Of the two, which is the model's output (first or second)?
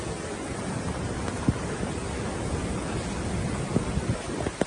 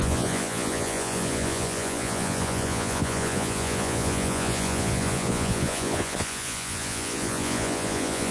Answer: second